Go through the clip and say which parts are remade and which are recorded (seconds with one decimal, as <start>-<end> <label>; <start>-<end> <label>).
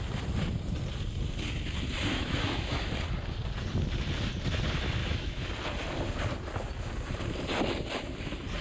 0.0-2.1 recorded; 2.1-2.9 remade; 2.9-5.0 recorded; 5.0-5.5 remade; 5.5-8.6 recorded